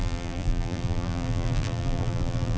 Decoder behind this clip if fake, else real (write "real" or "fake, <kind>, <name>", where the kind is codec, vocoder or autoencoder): fake, vocoder, BigVGAN v2